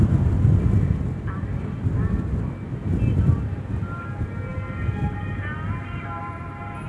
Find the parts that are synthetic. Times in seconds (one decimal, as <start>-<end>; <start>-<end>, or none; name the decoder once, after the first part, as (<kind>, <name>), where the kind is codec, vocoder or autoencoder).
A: none